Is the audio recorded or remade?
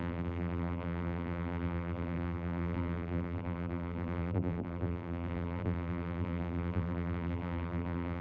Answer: remade